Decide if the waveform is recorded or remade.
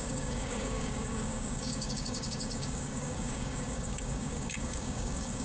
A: remade